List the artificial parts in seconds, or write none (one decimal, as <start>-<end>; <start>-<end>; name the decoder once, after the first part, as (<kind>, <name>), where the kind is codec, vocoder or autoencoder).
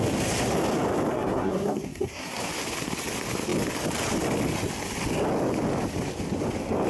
1.1-2.4 (codec, SNAC)